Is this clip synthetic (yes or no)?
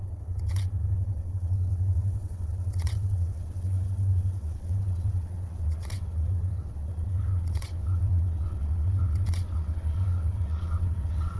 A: yes